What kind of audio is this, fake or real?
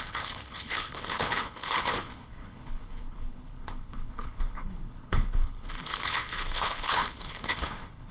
fake